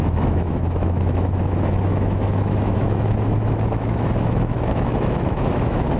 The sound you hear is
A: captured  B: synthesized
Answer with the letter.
B